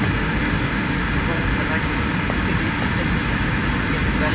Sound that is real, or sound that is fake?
real